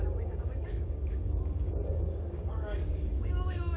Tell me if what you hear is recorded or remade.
remade